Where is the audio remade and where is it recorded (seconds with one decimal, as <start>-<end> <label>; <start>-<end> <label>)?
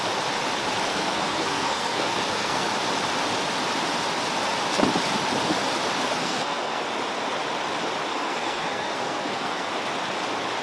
0.0-0.9 recorded; 0.9-2.7 remade; 2.7-6.2 recorded; 6.2-6.8 remade; 6.8-8.1 recorded; 8.1-9.7 remade; 9.7-10.6 recorded